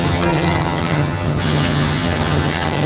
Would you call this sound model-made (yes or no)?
yes